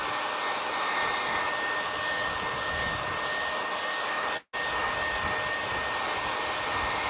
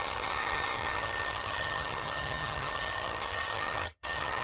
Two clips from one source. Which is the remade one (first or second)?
second